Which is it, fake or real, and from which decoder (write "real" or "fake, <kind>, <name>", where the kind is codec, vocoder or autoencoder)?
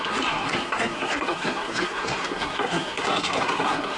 fake, codec, SNAC